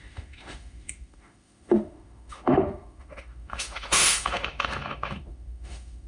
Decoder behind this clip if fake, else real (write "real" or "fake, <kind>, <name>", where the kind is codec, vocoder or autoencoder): fake, autoencoder, DAC-VAE